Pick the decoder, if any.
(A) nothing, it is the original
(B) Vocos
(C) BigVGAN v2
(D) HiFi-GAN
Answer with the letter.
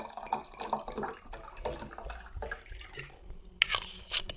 A